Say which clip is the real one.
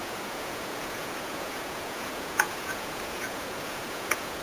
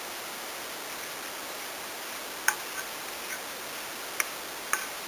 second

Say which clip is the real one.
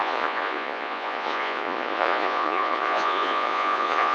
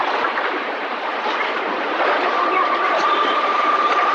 second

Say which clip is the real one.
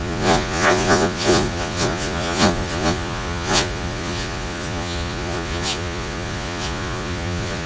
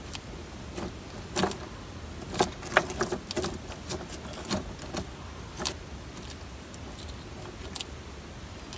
second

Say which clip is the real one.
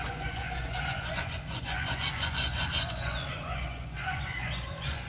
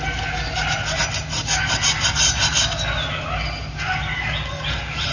second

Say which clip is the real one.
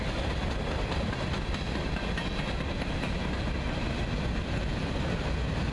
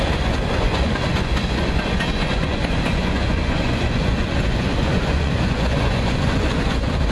first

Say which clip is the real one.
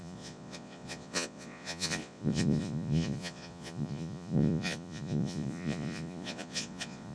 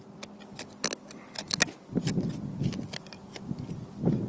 second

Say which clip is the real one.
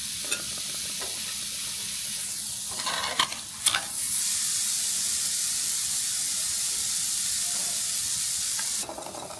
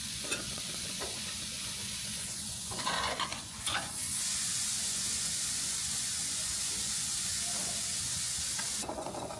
first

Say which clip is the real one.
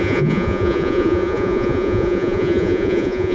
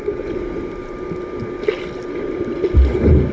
second